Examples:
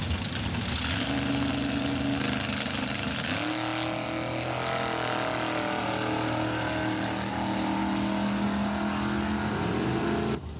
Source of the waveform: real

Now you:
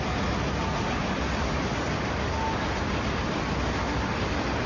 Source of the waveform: real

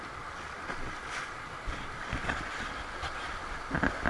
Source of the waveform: real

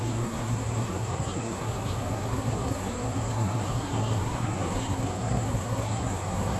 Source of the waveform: fake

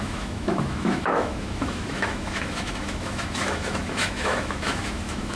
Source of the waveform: fake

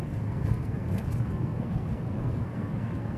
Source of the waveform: fake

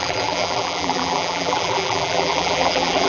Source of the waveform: fake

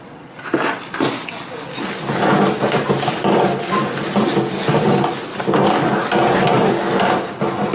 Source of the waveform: real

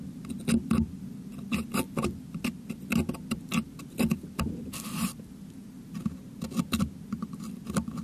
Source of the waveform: real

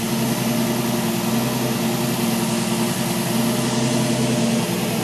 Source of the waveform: real